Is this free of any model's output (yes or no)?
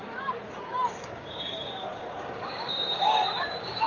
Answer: no